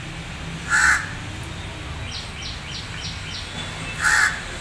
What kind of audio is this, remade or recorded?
recorded